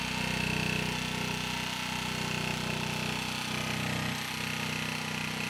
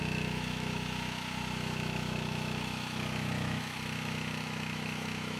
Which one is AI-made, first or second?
second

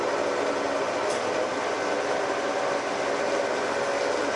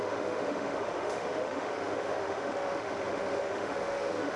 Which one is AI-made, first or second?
second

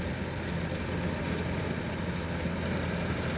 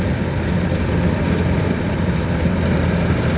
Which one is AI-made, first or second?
second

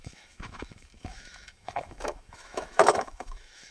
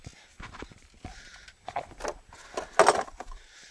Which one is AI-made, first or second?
first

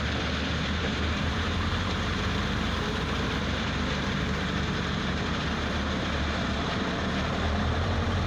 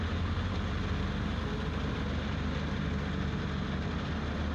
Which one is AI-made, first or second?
first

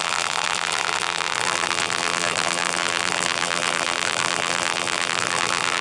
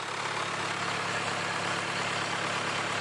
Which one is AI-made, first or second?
first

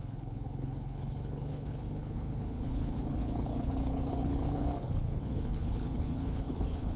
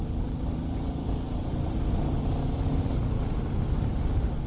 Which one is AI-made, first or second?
first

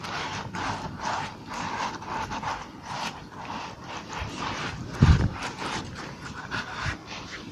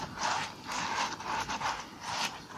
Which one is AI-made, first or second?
first